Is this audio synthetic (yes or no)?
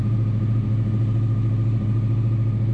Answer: no